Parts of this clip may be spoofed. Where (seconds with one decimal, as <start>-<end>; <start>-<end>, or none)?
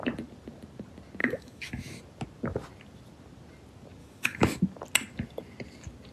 1.2-2.0; 4.0-4.6